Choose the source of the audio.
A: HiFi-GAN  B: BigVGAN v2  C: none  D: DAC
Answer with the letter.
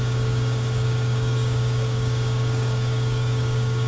D